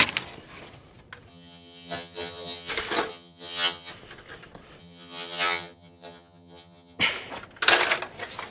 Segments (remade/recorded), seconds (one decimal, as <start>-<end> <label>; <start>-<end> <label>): 0.0-1.3 recorded; 1.3-2.7 remade; 2.7-3.1 recorded; 3.1-3.9 remade; 3.9-4.8 recorded; 4.8-7.0 remade; 7.0-8.5 recorded